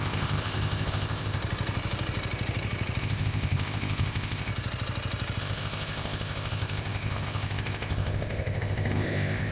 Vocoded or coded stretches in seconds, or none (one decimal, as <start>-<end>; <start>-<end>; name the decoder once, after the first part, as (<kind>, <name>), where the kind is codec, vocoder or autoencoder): 0.0-1.4 (codec, ZipCodec); 3.0-4.5; 5.4-9.5